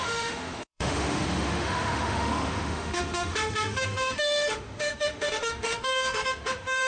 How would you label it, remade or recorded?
remade